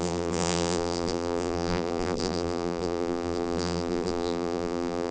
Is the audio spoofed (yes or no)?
yes